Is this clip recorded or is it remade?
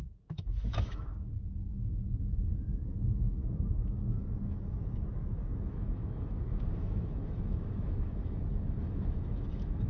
remade